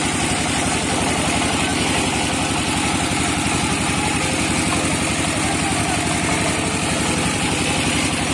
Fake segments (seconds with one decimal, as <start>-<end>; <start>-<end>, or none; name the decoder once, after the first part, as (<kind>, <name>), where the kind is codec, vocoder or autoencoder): none